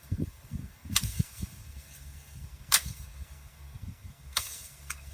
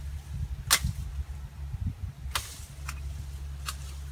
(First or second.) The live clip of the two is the second